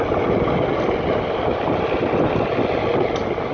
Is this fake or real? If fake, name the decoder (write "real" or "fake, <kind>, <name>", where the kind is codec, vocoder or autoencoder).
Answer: real